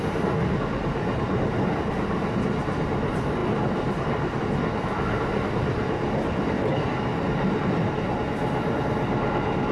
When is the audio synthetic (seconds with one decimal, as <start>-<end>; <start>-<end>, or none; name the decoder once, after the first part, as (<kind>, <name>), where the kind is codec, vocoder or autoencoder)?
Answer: none

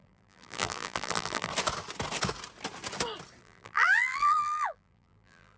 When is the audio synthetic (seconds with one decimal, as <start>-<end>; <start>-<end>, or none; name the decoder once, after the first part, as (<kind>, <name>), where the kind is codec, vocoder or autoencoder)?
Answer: 0.0-1.5 (vocoder, BigVGAN v2); 3.4-5.6